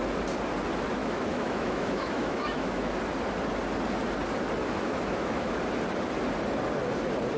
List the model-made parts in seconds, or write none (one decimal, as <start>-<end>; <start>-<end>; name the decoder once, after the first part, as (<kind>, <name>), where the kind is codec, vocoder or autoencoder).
1.0-2.9 (autoencoder, DAC-VAE); 4.6-5.5